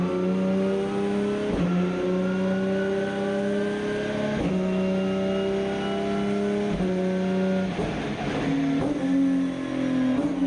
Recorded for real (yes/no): yes